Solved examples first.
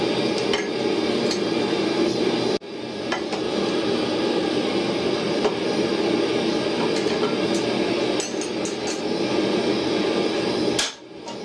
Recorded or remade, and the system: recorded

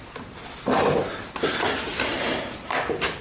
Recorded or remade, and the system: recorded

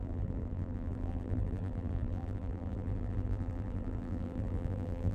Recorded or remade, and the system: remade, vocoder, BigVGAN v2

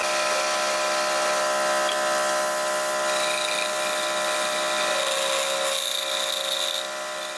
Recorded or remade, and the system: recorded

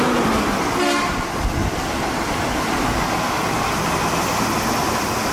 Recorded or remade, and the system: recorded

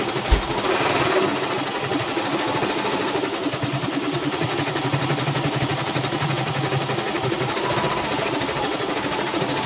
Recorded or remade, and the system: remade, vocoder, BigVGAN v2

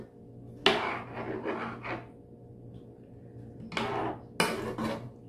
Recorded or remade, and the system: recorded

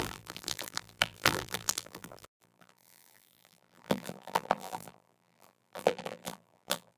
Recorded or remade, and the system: remade, vocoder, BigVGAN v2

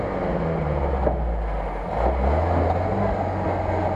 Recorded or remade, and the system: recorded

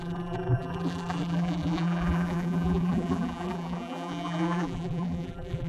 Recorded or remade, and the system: remade, vocoder, BigVGAN v2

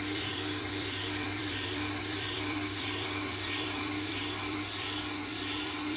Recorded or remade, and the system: remade, vocoder, BigVGAN v2